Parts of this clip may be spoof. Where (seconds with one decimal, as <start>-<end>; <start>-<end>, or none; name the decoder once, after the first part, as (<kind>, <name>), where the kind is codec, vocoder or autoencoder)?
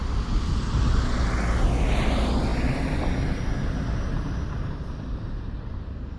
0.0-0.5 (vocoder, BigVGAN v2)